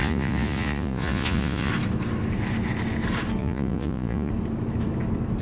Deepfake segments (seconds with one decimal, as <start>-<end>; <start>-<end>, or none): 0.0-1.7; 3.4-4.3